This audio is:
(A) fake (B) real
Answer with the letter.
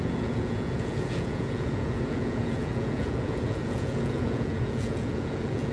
A